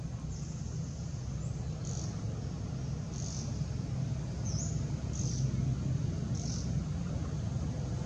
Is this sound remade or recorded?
recorded